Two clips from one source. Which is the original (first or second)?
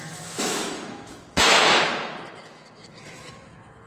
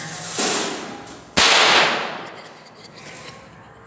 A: second